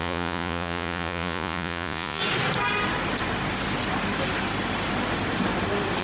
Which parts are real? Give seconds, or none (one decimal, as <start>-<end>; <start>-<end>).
2.2-6.0